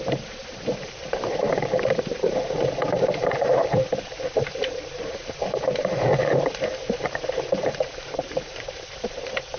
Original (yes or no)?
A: no